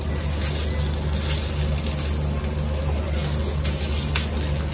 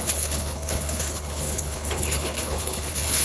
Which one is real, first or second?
first